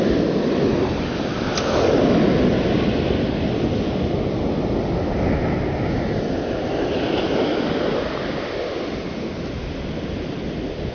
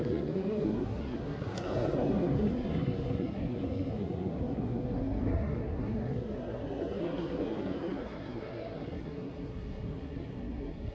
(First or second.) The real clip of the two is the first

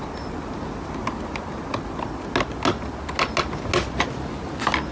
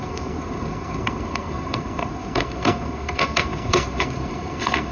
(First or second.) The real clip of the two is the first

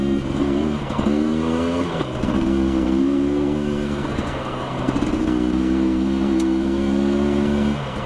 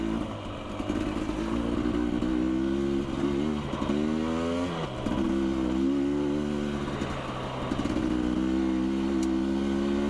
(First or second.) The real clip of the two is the second